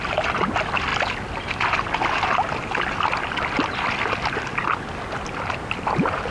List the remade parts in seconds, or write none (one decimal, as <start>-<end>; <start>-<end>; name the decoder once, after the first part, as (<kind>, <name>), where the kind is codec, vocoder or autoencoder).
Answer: none